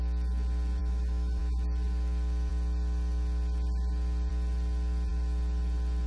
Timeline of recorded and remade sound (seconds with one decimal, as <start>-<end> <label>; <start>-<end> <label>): 0.0-0.8 recorded; 0.8-1.4 remade; 1.4-6.1 recorded

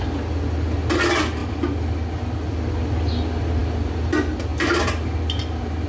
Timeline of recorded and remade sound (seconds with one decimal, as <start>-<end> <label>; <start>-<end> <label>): 0.0-5.9 recorded

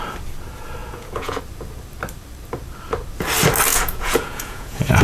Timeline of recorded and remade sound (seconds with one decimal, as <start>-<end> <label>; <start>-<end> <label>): 0.0-0.8 recorded; 0.8-1.4 remade; 1.4-3.7 recorded; 3.7-5.0 remade

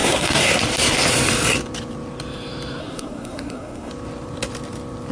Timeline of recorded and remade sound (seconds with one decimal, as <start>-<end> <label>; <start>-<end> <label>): 0.0-0.6 remade; 0.6-2.8 recorded; 2.8-3.9 remade; 3.9-5.1 recorded

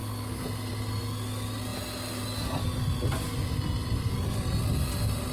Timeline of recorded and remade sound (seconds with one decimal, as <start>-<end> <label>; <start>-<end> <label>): 0.0-5.3 recorded

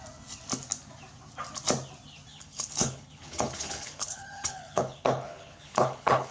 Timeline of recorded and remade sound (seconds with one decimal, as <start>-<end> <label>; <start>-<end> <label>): 0.0-2.3 recorded; 2.3-6.3 remade

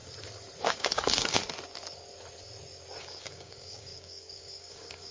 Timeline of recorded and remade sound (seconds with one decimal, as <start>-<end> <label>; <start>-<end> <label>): 0.0-0.6 recorded; 0.6-1.4 remade; 1.4-3.0 recorded; 3.0-5.1 remade

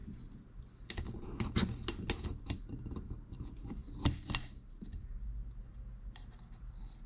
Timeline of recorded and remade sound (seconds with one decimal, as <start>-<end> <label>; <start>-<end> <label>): 0.0-7.1 recorded